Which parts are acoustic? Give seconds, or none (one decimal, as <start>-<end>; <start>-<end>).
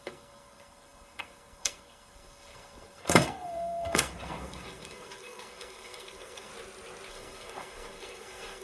6.5-7.1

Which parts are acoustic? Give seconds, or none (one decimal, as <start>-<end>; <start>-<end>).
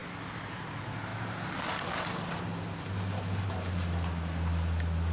0.0-5.1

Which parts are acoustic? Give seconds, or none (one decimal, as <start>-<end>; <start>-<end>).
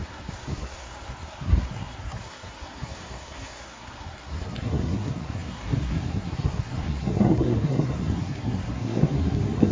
none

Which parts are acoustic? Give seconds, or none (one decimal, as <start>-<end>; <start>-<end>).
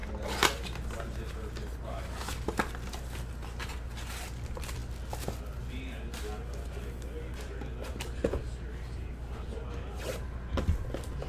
0.0-11.3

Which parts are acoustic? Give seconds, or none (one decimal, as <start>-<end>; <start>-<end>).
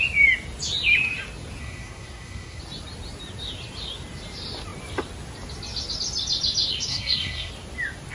0.0-1.6; 2.6-6.9; 7.5-8.1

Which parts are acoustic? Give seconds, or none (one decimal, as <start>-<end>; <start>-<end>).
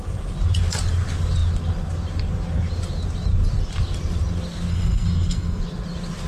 0.0-4.7; 5.6-6.3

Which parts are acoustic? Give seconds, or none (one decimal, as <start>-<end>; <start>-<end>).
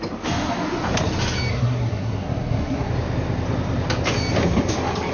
0.0-1.5; 2.9-5.1